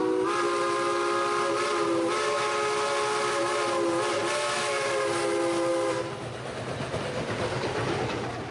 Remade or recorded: recorded